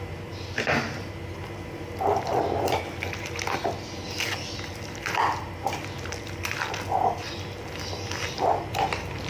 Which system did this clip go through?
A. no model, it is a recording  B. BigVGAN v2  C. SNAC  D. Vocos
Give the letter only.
A